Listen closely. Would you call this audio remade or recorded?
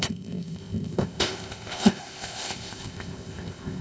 remade